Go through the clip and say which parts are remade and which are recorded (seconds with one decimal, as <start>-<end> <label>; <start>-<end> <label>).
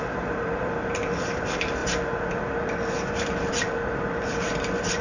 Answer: 0.0-5.0 remade